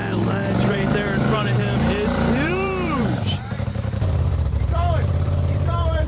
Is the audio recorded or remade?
remade